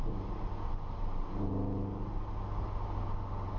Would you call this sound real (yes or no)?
yes